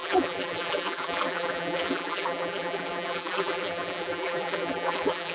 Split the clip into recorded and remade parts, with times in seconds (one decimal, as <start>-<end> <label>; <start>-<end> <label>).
0.0-5.3 remade